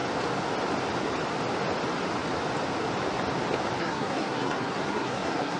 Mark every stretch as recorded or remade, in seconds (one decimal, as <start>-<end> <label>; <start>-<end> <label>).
0.0-3.8 recorded; 3.8-5.6 remade